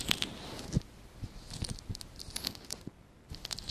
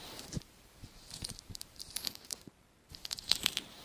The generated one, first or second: second